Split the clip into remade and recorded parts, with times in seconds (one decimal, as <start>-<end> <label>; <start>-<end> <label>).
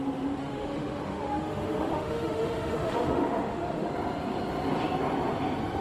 0.0-0.4 recorded; 0.4-3.9 remade; 3.9-5.8 recorded